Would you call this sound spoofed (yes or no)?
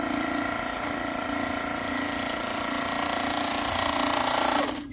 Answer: no